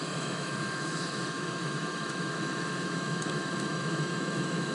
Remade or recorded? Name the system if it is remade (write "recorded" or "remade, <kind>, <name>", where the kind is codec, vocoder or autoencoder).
remade, autoencoder, DAC-VAE